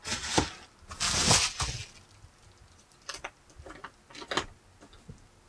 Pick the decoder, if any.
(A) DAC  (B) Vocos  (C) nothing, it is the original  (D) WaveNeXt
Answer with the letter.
C